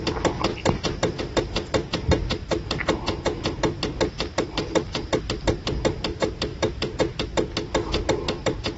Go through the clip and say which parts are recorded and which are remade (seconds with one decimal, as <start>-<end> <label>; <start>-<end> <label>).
0.0-8.8 recorded